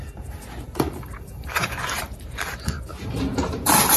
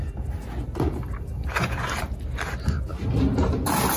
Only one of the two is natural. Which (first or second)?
second